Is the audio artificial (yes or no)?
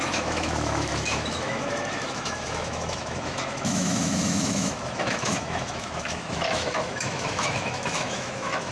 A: yes